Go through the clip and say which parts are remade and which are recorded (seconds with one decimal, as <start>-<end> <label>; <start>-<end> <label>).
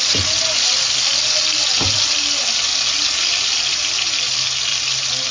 0.0-5.3 recorded